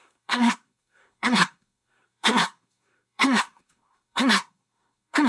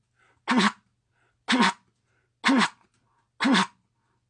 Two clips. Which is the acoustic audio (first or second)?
second